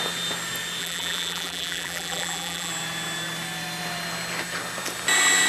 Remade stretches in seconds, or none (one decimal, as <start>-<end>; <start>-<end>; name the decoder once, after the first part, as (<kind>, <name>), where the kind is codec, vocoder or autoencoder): 0.8-2.7 (vocoder, BigVGAN v2)